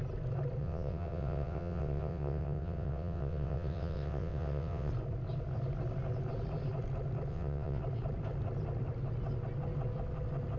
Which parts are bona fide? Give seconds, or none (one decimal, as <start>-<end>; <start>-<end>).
0.0-0.6; 4.9-7.3; 7.8-10.6